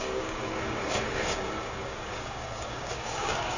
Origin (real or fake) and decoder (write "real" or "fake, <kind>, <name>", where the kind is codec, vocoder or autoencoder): fake, codec, DAC